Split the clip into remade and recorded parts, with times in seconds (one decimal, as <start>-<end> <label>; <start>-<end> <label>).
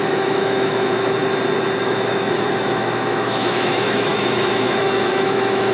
0.0-1.2 remade; 1.2-1.8 recorded; 1.8-5.7 remade